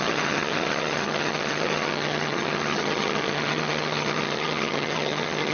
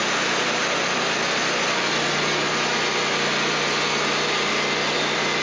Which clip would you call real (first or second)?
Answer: second